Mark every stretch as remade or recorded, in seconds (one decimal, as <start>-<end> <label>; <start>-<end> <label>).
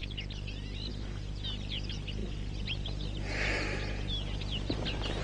0.0-5.2 recorded